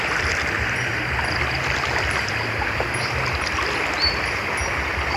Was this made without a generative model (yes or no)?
yes